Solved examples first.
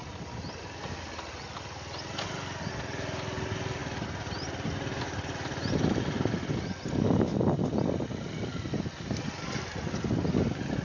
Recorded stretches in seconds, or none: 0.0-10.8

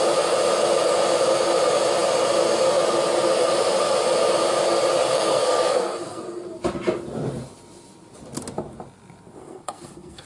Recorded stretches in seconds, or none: 0.0-5.1; 6.2-9.4

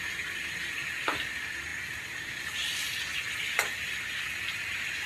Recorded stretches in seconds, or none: 0.0-5.1

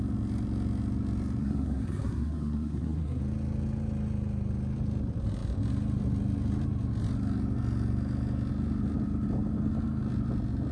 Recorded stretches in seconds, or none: 0.0-1.4; 3.2-10.7